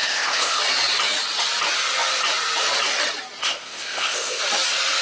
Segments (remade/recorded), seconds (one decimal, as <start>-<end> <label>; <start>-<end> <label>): 0.0-0.6 remade; 0.6-3.4 recorded; 3.4-4.4 remade; 4.4-5.0 recorded